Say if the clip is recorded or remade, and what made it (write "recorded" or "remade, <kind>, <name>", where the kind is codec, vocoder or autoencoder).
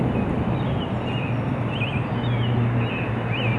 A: recorded